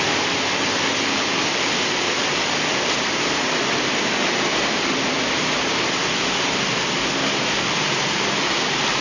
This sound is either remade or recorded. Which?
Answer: recorded